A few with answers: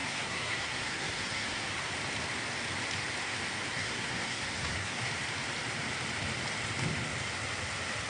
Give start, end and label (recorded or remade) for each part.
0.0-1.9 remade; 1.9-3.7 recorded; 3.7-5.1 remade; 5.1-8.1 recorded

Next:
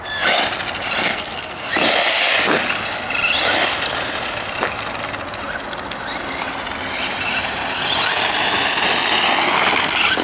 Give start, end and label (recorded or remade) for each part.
0.0-1.0 recorded; 1.0-1.7 remade; 1.7-10.2 recorded

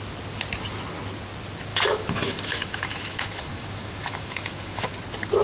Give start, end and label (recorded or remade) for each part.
0.0-1.7 recorded; 1.7-4.9 remade; 4.9-5.4 recorded